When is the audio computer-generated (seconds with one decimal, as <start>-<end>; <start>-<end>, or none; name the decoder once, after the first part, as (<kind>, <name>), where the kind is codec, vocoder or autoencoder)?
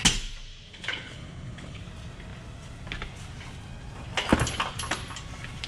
0.7-1.8 (codec, HILCodec)